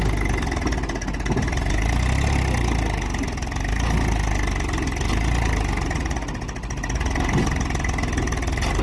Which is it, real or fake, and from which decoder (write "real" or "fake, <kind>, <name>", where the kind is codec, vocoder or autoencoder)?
real